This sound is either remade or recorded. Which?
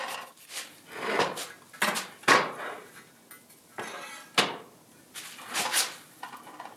recorded